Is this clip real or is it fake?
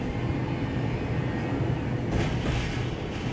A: real